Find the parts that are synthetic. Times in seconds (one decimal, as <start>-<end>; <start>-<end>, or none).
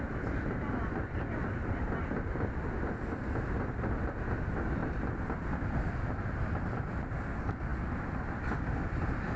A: 4.8-7.1